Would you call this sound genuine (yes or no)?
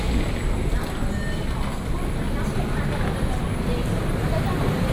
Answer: yes